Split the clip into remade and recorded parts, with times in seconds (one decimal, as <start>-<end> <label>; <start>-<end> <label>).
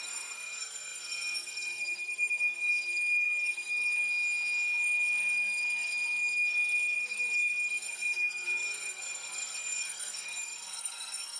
0.0-4.1 remade; 4.1-4.8 recorded; 4.8-11.4 remade